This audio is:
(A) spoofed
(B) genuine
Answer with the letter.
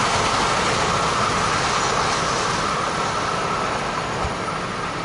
B